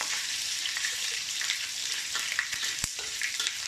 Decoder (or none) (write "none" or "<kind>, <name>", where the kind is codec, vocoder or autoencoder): vocoder, BigVGAN v2